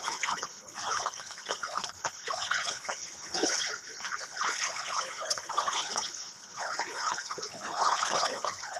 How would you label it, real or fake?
fake